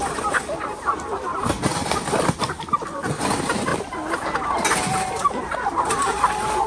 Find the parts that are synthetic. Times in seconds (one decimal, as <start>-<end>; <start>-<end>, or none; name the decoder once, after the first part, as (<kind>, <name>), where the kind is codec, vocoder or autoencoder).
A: none